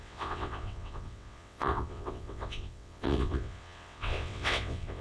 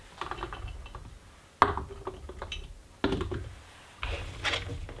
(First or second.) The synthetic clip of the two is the first